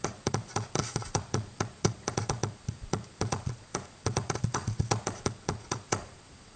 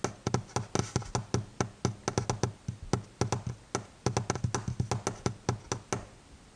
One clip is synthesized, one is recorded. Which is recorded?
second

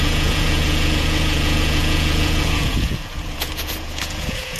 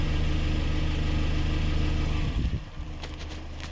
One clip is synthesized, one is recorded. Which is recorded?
second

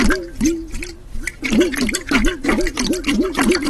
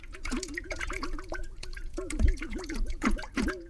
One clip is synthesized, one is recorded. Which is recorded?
first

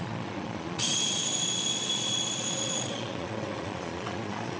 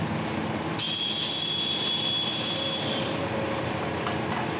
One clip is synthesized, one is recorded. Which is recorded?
second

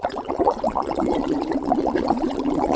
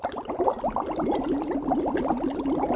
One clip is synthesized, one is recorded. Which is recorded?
second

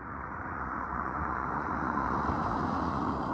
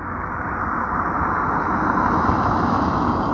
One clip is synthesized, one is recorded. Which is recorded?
second